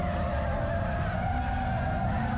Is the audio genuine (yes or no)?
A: yes